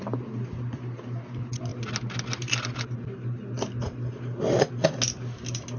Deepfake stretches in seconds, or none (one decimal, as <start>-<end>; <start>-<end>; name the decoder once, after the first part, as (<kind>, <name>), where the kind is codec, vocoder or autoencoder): none